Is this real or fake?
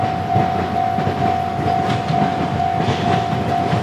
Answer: real